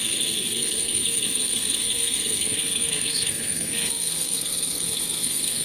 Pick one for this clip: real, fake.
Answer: fake